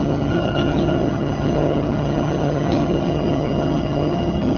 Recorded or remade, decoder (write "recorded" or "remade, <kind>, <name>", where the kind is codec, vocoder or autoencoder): remade, vocoder, HiFi-GAN